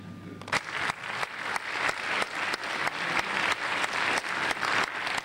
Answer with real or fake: real